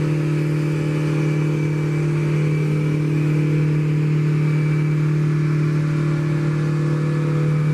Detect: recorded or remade recorded